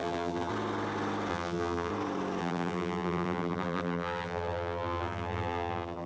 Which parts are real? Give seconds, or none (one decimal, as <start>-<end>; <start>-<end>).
0.5-1.3; 1.9-2.4